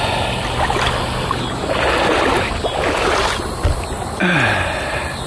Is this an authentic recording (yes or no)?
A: yes